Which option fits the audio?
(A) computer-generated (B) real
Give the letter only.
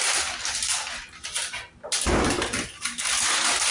B